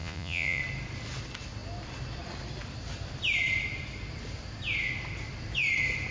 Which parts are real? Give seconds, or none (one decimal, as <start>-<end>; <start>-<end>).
0.6-6.1